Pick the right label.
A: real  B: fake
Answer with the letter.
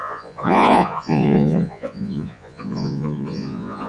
B